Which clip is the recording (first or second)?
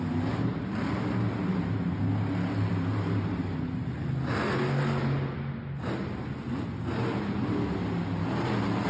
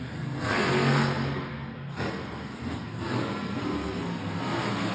first